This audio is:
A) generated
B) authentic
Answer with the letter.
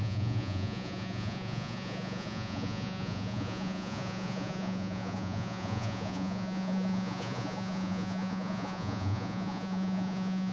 A